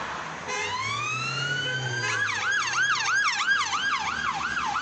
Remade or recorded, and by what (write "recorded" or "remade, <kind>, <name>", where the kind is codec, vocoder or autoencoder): recorded